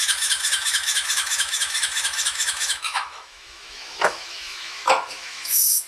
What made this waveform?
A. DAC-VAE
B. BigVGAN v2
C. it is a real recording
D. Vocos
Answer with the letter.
A